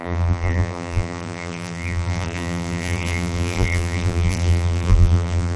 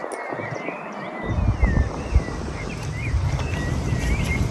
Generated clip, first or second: first